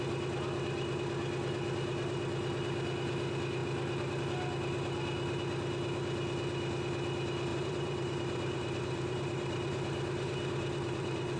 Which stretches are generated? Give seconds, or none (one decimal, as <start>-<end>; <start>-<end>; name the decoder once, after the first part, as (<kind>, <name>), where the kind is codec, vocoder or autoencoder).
7.5-11.4 (vocoder, BigVGAN v2)